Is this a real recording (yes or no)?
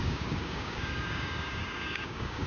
no